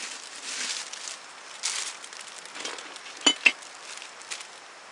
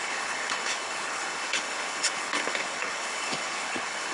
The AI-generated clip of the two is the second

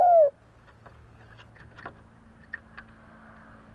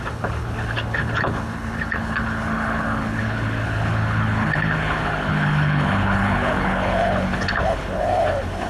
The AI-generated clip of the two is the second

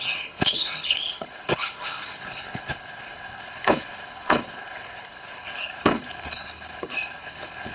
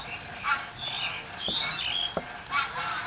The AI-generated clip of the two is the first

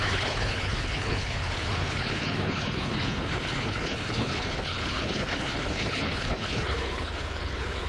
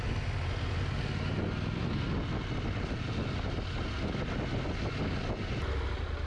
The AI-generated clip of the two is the first